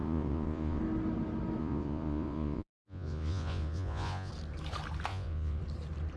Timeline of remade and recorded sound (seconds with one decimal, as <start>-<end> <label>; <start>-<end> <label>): 0.0-0.8 remade; 0.8-1.6 recorded; 1.6-4.3 remade; 4.3-5.1 recorded; 5.1-5.6 remade; 5.6-6.2 recorded